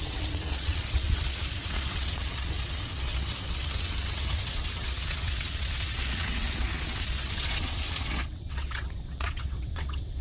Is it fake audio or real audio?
fake